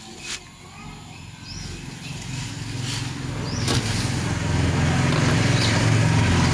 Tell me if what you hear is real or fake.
real